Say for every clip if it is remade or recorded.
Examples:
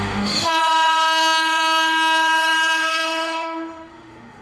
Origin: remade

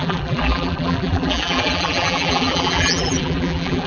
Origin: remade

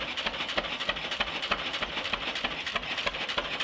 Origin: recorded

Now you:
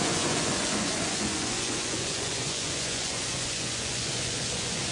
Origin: remade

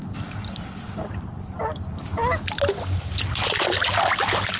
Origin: remade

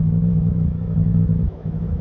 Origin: remade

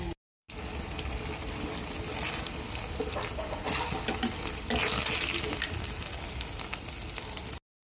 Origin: recorded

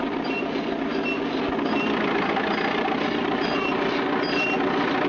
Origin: recorded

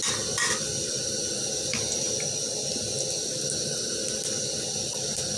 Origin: recorded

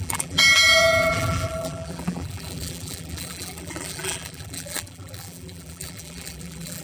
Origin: remade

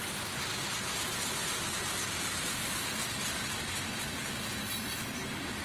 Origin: recorded